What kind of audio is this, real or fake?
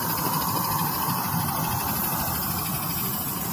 real